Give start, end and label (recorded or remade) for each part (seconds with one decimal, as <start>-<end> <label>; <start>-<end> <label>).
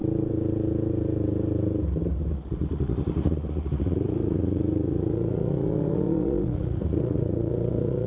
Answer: 0.0-2.3 recorded; 2.3-8.1 remade